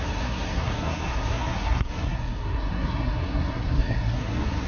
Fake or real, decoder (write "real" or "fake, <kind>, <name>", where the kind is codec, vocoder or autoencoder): fake, codec, SNAC